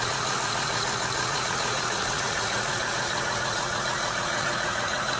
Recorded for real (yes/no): no